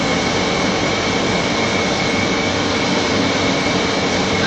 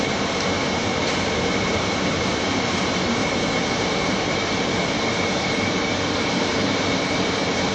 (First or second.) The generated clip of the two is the second